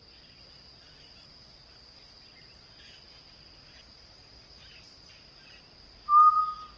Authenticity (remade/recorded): recorded